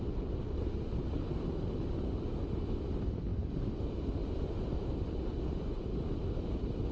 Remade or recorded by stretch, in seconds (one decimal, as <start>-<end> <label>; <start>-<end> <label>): 0.0-6.9 recorded